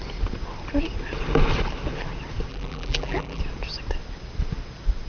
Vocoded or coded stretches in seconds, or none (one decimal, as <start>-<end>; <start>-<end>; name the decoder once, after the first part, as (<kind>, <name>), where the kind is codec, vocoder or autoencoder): 2.5-3.4 (vocoder, BigVGAN v2)

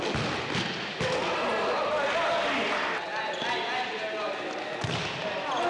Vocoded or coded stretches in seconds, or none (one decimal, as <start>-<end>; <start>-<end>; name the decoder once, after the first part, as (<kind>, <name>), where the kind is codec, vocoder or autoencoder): none

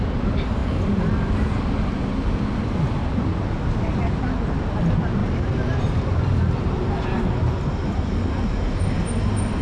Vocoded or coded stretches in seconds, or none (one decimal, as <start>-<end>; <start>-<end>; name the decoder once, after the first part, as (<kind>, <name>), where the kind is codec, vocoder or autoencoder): 5.2-7.3 (vocoder, BigVGAN v2)

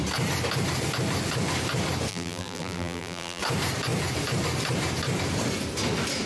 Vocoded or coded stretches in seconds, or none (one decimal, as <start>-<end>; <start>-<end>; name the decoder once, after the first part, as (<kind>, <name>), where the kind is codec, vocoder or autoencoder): 2.1-3.4 (vocoder, BigVGAN v2)